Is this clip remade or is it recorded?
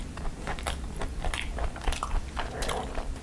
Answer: recorded